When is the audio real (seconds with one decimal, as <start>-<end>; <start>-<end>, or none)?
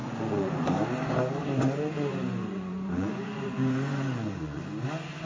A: 0.7-1.4; 4.6-5.3